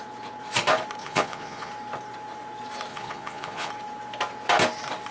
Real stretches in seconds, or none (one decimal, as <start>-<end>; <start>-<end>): 0.0-1.0; 1.7-2.9; 3.7-5.1